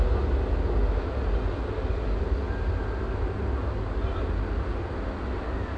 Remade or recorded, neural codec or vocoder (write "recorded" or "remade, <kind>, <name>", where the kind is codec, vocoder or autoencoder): recorded